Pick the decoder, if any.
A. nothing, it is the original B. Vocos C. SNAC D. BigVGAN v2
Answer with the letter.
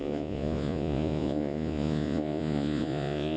B